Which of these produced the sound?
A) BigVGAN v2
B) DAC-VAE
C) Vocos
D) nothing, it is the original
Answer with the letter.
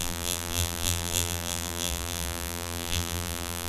A